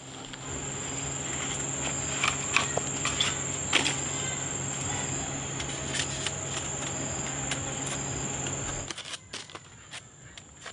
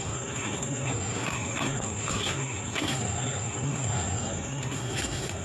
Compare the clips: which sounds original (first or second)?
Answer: first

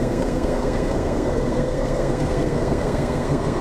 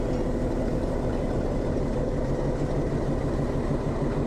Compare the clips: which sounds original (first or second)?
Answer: second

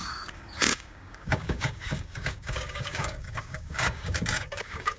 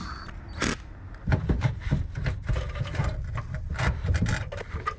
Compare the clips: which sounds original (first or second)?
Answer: second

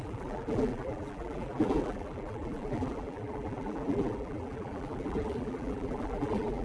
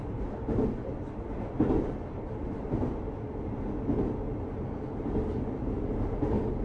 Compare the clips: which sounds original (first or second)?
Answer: second